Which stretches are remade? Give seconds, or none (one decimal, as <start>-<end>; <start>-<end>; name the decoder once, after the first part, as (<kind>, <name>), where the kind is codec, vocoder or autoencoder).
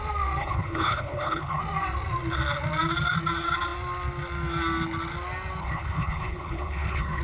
0.4-1.6 (codec, HILCodec); 5.6-7.2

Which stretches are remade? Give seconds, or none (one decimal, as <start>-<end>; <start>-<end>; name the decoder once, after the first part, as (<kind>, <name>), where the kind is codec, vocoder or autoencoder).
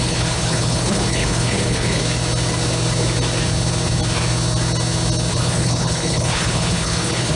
0.0-2.0 (codec, HILCodec); 5.3-7.4